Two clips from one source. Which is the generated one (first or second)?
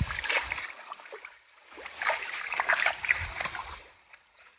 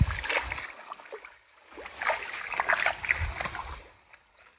first